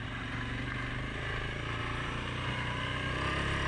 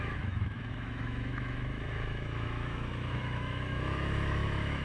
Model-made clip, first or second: second